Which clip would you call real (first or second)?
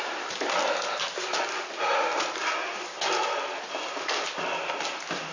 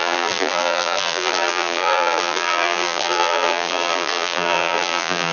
first